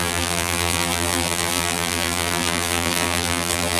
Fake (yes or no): yes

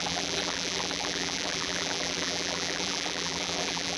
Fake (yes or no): yes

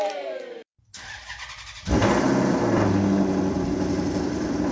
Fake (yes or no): yes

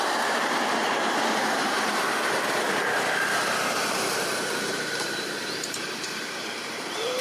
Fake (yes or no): yes